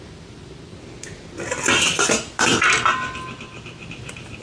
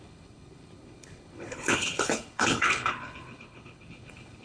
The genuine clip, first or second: first